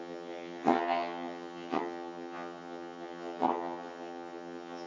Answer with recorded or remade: remade